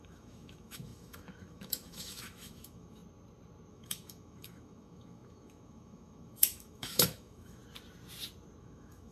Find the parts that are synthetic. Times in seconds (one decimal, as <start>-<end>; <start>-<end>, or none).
0.0-3.0; 3.7-7.6; 8.6-9.1